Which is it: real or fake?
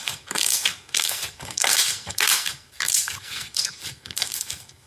fake